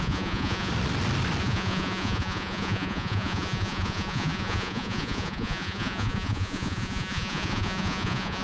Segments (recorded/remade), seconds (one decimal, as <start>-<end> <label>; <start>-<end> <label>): 0.0-0.7 remade; 0.7-1.4 recorded; 1.4-8.4 remade